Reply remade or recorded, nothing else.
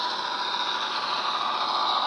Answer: recorded